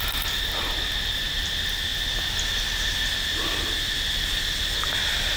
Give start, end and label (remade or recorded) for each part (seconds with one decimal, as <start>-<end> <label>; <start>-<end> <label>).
0.0-5.4 recorded